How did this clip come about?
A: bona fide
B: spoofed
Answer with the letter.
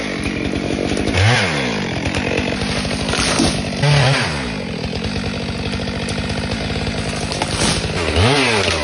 A